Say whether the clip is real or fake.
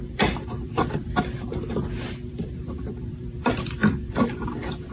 fake